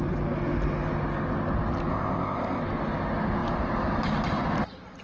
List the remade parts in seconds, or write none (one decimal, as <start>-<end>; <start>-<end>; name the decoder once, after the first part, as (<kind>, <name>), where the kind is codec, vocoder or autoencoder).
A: 1.9-2.6 (codec, ZipCodec)